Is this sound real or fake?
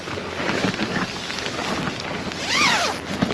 real